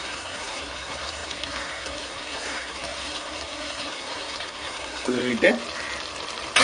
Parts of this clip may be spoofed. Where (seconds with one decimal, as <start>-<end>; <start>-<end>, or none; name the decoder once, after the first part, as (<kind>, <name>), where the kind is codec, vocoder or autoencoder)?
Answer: 0.0-5.3 (codec, SNAC)